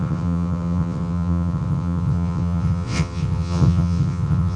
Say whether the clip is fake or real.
fake